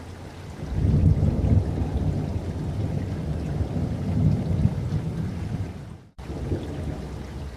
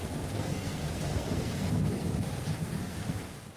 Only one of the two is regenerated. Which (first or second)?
second